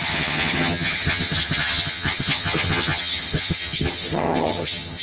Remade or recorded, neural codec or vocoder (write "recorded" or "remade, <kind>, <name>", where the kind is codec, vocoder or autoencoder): remade, vocoder, HiFi-GAN